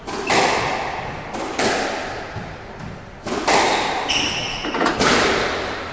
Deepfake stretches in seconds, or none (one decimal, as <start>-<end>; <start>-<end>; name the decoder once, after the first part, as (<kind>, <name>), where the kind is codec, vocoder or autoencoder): 4.4-5.1 (vocoder, Vocos)